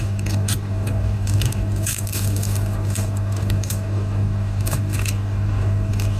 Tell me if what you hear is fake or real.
fake